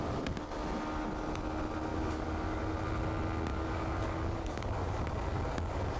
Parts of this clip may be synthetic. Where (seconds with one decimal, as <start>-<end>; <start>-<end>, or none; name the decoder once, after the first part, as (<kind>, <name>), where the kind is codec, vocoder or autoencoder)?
1.9-2.6 (codec, DAC); 3.5-6.0